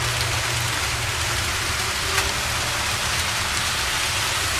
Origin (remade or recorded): recorded